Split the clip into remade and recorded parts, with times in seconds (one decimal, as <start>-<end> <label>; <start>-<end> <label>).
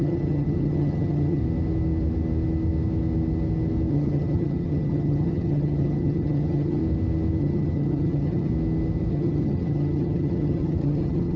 0.0-1.4 remade; 1.4-3.9 recorded; 3.9-6.8 remade; 6.8-7.4 recorded; 7.4-8.5 remade; 8.5-9.1 recorded; 9.1-11.4 remade